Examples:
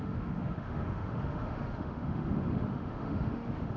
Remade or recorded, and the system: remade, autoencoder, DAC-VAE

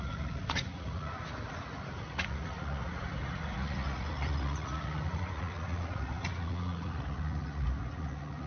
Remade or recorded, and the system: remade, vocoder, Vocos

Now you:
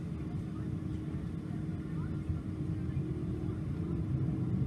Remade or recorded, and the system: recorded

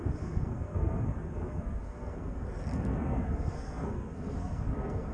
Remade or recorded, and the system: remade, codec, SNAC